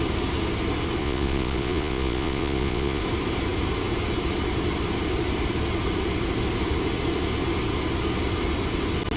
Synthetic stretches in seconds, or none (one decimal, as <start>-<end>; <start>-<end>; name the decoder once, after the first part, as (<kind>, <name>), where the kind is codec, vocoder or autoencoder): 1.0-3.0 (vocoder, Vocos)